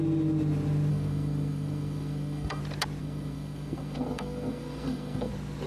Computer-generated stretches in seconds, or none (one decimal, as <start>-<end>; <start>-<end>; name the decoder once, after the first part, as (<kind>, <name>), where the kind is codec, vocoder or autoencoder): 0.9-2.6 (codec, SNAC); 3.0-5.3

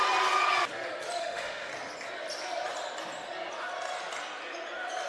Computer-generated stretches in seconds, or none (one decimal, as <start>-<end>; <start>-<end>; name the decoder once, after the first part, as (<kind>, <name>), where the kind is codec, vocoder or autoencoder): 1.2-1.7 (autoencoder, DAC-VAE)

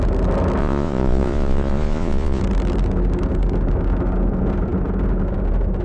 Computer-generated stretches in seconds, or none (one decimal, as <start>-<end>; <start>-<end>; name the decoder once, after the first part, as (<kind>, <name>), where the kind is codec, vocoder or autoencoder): 0.6-2.4 (vocoder, Vocos)

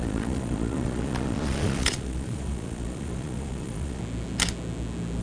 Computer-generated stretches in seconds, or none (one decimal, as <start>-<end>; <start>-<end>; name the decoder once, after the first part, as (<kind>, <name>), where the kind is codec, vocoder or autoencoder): 0.0-4.0 (vocoder, Vocos)

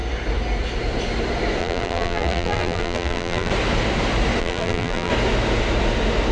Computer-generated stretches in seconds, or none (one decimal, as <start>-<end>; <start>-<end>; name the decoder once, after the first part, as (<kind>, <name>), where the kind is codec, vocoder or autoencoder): 1.6-3.5 (vocoder, BigVGAN v2); 4.4-5.1

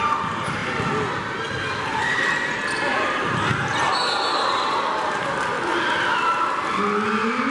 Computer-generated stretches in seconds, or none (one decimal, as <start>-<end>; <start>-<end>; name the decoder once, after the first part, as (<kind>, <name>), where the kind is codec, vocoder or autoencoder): none

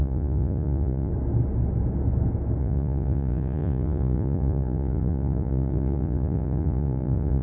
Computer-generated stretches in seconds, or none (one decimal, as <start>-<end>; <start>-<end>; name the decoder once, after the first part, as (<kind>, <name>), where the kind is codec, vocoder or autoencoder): 0.0-1.1 (vocoder, Vocos); 2.6-7.4